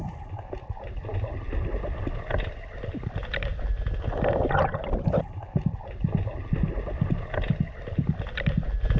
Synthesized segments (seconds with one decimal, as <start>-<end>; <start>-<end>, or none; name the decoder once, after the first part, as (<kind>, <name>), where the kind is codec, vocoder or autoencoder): none